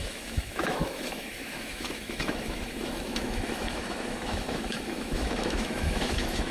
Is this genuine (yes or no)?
no